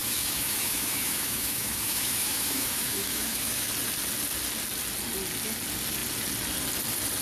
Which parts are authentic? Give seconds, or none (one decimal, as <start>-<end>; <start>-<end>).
3.7-7.2